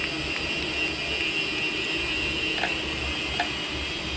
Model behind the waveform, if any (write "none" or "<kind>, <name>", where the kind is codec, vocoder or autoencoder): none